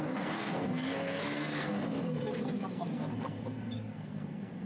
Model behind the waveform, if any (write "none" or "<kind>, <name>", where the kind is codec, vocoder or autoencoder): codec, SNAC